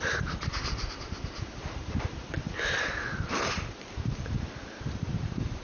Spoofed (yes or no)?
yes